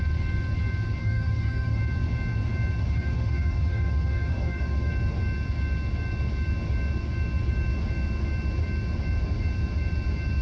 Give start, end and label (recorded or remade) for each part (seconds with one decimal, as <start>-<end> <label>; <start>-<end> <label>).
0.0-1.0 recorded; 1.0-1.8 remade; 1.8-2.8 recorded; 2.8-4.9 remade; 4.9-10.4 recorded